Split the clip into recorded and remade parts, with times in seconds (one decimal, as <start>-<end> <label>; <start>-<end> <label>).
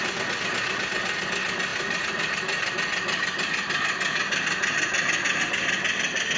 0.0-6.4 recorded